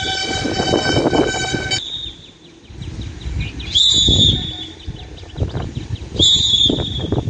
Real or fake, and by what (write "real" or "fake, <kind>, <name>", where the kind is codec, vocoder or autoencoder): real